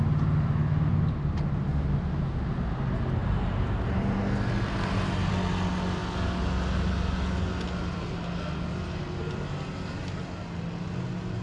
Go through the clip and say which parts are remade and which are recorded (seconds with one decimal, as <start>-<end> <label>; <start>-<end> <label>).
0.0-3.2 recorded; 3.2-4.2 remade; 4.2-11.4 recorded